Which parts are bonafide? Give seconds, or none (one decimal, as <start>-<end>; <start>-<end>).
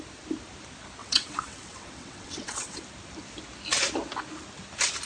0.0-1.0; 2.8-5.1